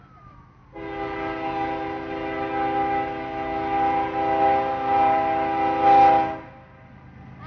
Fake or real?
real